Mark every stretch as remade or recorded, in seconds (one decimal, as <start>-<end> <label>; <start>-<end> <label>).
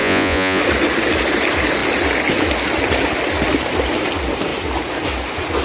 0.0-0.6 remade; 0.6-5.6 recorded